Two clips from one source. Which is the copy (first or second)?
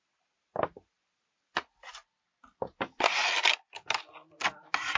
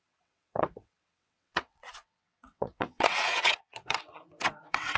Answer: second